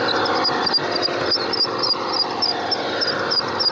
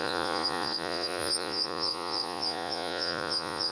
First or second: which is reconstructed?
second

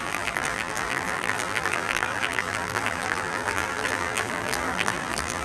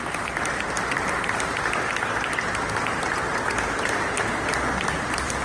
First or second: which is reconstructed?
first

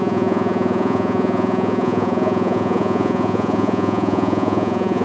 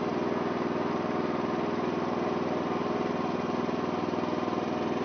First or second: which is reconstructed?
first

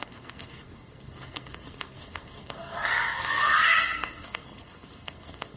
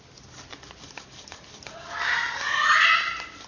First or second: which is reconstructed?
first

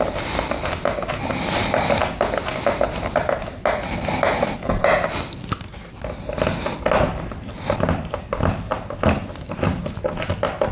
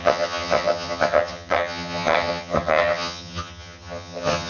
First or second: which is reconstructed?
second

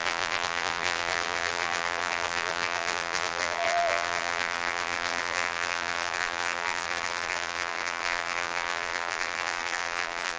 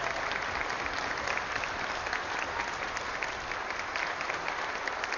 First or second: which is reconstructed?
first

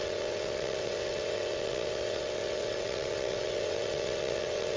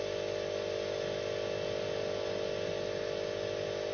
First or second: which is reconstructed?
first